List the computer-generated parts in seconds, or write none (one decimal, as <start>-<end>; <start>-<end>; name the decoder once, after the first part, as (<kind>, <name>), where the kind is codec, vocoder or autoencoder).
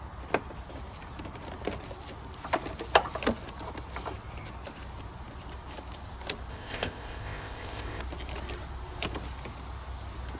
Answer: 6.5-8.0 (codec, ZipCodec)